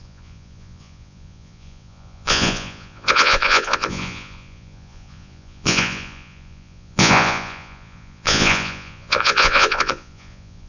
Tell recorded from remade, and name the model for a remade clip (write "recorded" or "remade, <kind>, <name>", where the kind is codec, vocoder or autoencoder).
remade, vocoder, Vocos